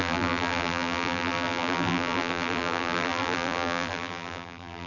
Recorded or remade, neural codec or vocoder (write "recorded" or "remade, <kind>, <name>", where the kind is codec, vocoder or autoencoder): remade, vocoder, BigVGAN v2